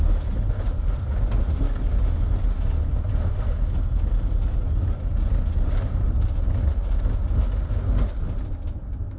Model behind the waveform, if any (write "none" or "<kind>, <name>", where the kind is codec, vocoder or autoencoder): none